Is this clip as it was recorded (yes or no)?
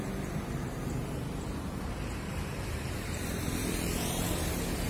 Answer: no